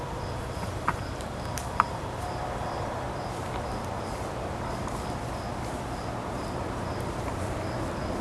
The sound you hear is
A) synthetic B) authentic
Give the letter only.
A